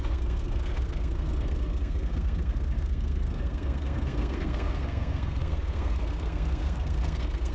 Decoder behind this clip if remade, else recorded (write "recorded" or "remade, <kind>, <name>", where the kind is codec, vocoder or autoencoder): remade, codec, SNAC